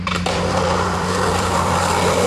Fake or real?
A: fake